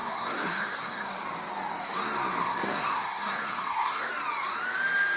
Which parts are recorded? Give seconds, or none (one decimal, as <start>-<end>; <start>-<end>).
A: 1.1-2.4; 4.1-5.2

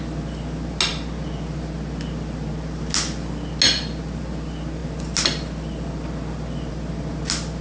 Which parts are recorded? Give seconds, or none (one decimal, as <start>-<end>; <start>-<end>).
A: 0.0-7.6

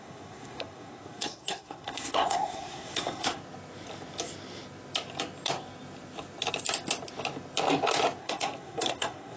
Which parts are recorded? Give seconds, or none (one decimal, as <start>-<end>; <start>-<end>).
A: 3.4-8.2

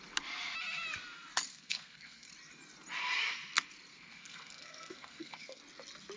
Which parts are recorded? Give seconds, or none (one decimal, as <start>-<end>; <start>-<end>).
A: 0.0-1.5; 2.3-3.9; 5.6-6.2

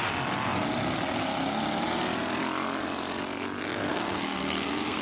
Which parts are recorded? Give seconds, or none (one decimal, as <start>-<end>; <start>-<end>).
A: 0.0-3.9

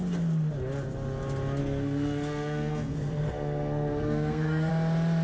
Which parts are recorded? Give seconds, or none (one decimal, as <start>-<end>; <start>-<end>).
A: 0.0-1.6; 4.7-5.2